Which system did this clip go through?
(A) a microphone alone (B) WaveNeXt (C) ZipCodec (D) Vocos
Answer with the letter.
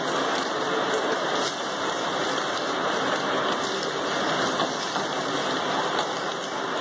A